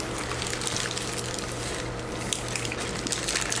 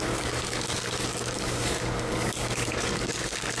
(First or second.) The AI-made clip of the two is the second